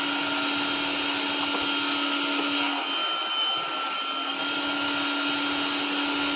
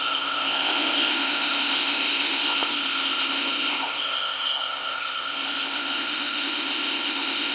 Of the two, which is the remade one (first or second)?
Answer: second